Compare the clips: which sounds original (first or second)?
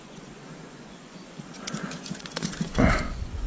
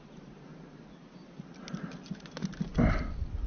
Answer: second